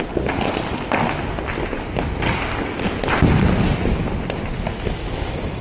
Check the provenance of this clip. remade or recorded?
recorded